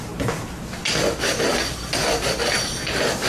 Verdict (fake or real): real